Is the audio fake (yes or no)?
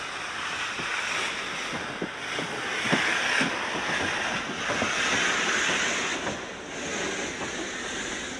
no